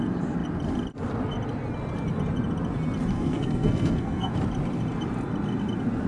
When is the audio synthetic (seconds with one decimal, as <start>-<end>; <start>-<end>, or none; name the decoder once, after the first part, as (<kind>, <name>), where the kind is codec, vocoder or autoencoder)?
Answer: 3.1-4.3 (codec, SNAC)